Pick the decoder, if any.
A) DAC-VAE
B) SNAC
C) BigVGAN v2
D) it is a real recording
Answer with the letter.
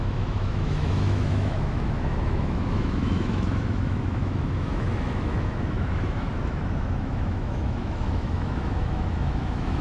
A